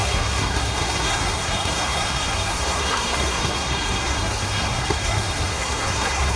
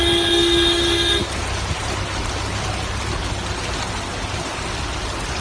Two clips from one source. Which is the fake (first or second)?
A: first